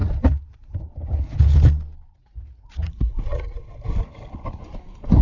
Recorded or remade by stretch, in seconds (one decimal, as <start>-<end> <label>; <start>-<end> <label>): 0.0-2.2 recorded; 2.2-3.6 remade; 3.6-5.2 recorded